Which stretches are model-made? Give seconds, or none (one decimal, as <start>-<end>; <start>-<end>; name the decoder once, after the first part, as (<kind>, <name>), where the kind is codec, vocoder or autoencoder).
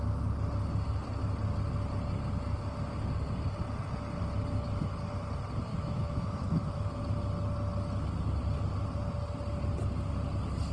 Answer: 5.7-7.0 (autoencoder, DAC-VAE)